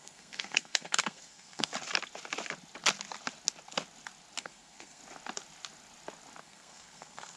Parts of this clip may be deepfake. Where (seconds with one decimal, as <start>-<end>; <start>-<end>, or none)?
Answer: 0.0-1.7; 4.4-5.0; 6.4-7.4